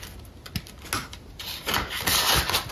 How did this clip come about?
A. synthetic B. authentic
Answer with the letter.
B